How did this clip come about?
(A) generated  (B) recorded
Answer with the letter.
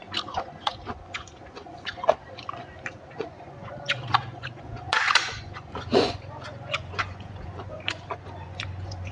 A